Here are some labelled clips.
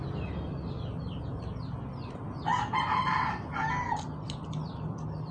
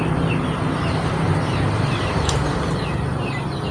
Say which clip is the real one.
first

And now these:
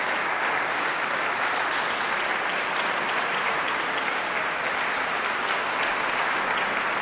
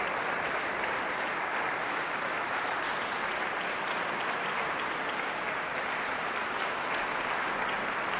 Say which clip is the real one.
first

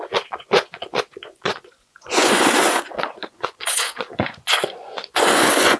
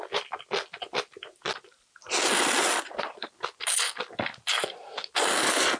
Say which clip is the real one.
second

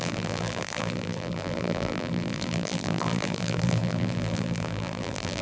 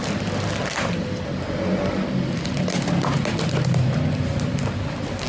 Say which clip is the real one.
second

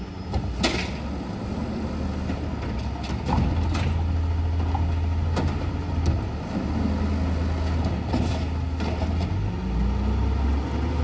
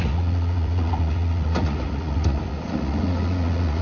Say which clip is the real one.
first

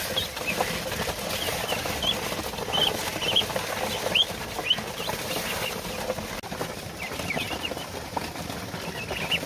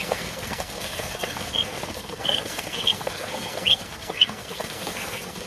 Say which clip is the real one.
first